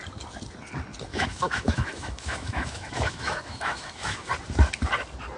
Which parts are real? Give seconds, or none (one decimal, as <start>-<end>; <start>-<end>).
0.0-1.1; 4.3-5.4